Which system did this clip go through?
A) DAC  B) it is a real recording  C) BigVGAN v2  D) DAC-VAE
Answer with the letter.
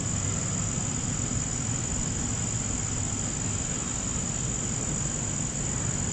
B